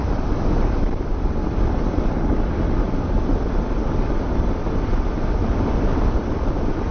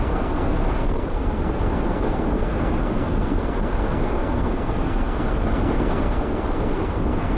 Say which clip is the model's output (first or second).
second